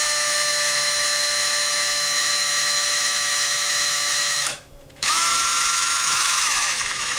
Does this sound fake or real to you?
fake